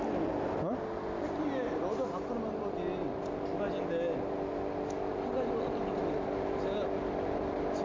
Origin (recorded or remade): recorded